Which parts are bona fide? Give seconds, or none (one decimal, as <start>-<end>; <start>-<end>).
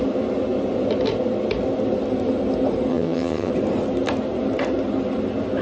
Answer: 0.0-2.9; 3.5-5.6